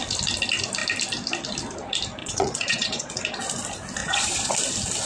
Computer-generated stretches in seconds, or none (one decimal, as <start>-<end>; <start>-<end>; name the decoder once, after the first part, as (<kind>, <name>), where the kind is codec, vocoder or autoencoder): 2.2-3.2 (vocoder, Vocos); 4.0-4.5